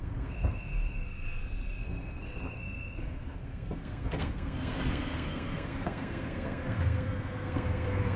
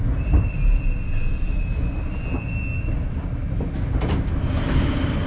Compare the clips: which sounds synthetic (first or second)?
first